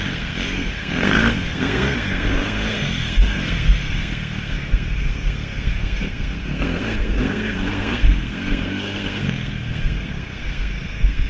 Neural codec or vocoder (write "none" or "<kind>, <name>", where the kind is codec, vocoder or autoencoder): codec, SNAC